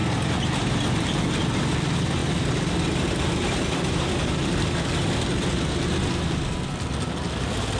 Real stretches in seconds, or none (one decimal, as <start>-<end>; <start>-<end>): 0.0-7.8